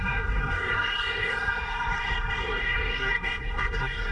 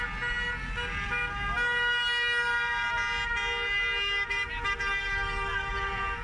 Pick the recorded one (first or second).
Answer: second